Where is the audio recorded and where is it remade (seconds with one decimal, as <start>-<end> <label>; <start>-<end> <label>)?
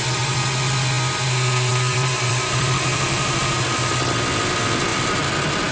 0.0-1.7 recorded; 1.7-3.5 remade; 3.5-4.9 recorded; 4.9-5.7 remade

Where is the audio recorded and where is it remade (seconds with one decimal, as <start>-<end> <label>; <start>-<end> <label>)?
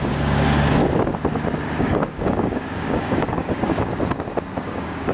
0.0-0.8 remade; 0.8-1.8 recorded; 1.8-3.9 remade; 3.9-4.6 recorded; 4.6-5.1 remade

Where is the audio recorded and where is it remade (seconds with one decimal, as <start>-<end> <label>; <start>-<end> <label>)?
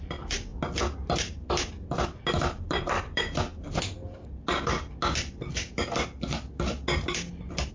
0.0-0.5 remade; 0.5-2.3 recorded; 2.3-3.5 remade; 3.5-7.7 recorded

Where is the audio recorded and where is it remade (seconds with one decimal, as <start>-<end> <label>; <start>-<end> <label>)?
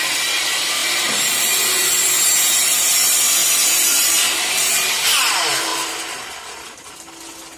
0.0-0.8 recorded; 0.8-2.9 remade; 2.9-3.4 recorded; 3.4-4.9 remade; 4.9-7.6 recorded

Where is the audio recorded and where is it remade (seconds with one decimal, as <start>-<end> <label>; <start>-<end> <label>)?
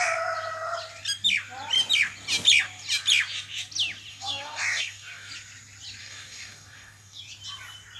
0.0-4.1 recorded; 4.1-5.3 remade; 5.3-6.0 recorded; 6.0-7.2 remade; 7.2-8.0 recorded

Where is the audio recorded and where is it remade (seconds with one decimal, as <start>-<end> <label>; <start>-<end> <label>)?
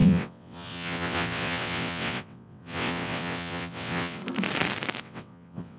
0.0-4.2 remade; 4.2-5.0 recorded; 5.0-5.8 remade